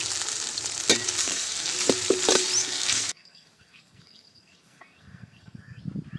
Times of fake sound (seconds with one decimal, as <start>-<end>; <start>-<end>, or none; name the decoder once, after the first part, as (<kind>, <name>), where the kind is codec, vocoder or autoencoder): 1.2-1.7 (codec, SNAC); 2.6-5.8